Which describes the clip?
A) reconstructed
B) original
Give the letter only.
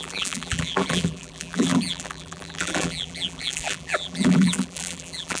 A